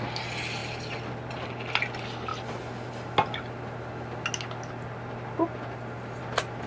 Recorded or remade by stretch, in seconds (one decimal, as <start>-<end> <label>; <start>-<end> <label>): 0.0-6.7 recorded